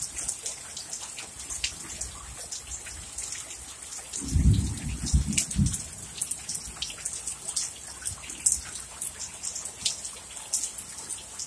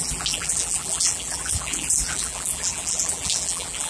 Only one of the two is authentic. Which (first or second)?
first